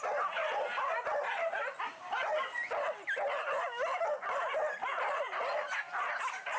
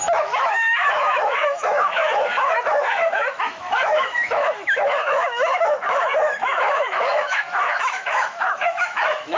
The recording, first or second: first